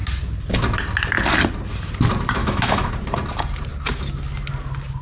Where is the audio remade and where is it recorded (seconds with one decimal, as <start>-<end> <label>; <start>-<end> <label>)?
0.0-2.4 recorded; 2.4-2.9 remade; 2.9-5.0 recorded